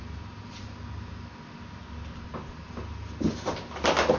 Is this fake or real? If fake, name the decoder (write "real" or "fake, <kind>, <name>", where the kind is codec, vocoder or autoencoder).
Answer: real